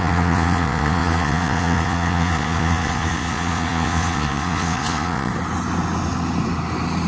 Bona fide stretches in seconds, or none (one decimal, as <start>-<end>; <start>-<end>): 5.3-7.1